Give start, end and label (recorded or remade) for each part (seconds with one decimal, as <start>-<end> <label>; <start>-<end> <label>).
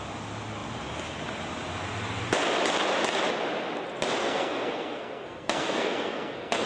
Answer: 0.0-4.2 recorded; 4.2-6.7 remade